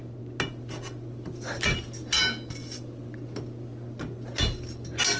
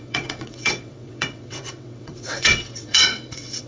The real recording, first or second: first